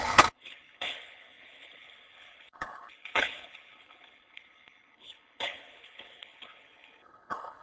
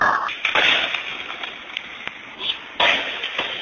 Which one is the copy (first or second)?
first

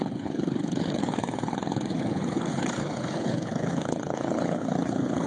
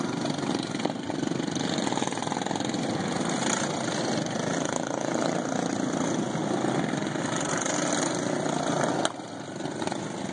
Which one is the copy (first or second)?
first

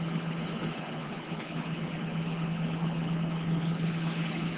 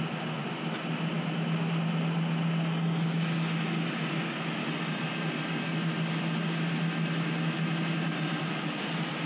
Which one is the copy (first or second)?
first